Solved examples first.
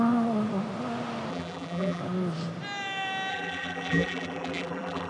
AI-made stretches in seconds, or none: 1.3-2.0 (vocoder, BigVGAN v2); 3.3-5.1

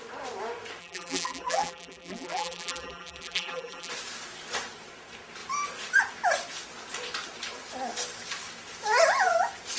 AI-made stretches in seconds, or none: 0.8-3.9 (vocoder, BigVGAN v2)

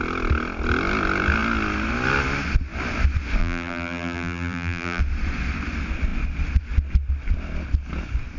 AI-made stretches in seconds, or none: 3.4-5.0 (vocoder, BigVGAN v2)